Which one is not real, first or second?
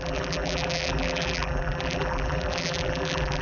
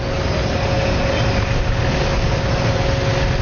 first